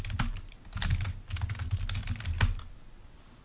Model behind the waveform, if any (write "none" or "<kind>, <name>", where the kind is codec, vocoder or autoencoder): none